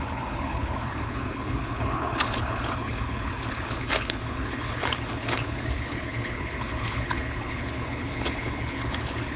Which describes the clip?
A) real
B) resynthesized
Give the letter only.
B